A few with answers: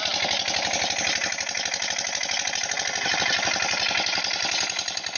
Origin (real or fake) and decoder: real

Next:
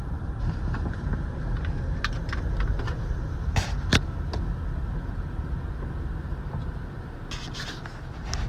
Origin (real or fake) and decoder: real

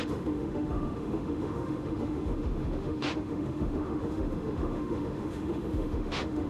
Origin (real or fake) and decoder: fake, autoencoder, DAC-VAE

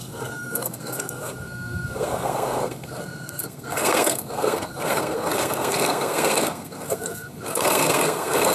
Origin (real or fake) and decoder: fake, codec, SNAC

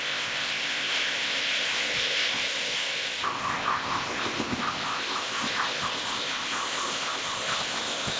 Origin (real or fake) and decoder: fake, codec, ZipCodec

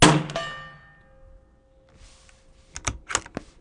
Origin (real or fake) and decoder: real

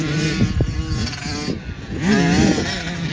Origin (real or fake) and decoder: real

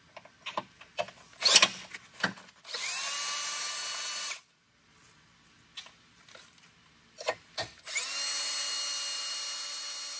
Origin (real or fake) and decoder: real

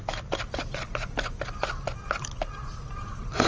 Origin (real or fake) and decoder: real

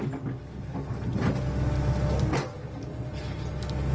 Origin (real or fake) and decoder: real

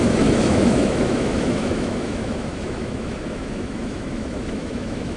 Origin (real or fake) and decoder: fake, autoencoder, DAC-VAE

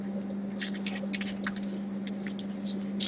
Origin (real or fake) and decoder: real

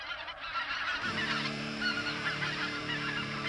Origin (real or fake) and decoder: fake, vocoder, BigVGAN v2